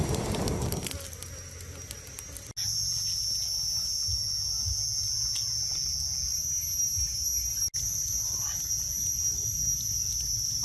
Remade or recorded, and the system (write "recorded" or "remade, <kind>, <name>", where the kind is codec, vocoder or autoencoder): recorded